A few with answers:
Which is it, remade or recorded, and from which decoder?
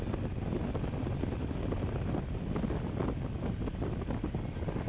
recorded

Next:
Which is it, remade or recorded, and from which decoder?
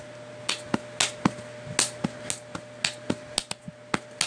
recorded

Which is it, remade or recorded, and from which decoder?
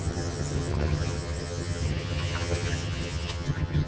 remade, vocoder, HiFi-GAN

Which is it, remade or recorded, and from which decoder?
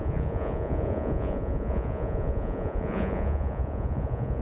remade, vocoder, Vocos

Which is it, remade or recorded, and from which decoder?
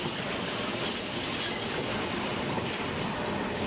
recorded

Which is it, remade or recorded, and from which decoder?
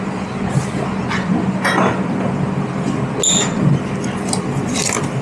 recorded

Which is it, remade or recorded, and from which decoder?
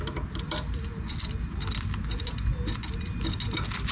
recorded